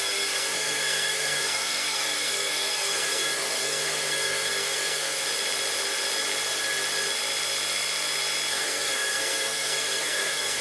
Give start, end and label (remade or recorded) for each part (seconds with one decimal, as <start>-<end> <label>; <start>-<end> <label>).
0.0-5.2 remade; 5.2-8.5 recorded; 8.5-10.6 remade